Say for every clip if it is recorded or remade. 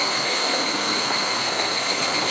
remade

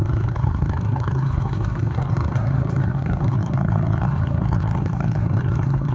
remade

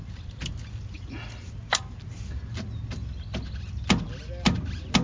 recorded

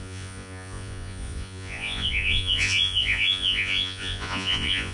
remade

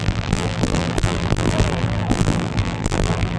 remade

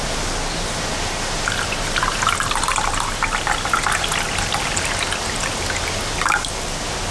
recorded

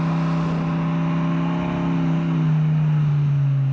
recorded